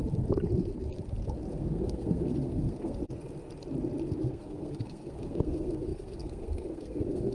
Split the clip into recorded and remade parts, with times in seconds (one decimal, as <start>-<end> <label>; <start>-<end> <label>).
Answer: 0.0-1.5 recorded; 1.5-3.0 remade; 3.0-4.2 recorded; 4.2-7.3 remade